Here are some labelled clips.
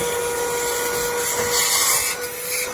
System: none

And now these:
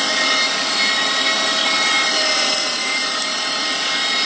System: none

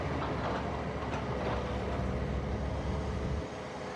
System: none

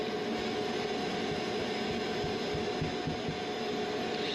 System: none